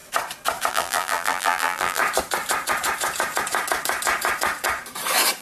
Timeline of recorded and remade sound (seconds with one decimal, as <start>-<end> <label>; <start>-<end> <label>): 0.0-0.7 recorded; 0.7-2.0 remade; 2.0-5.4 recorded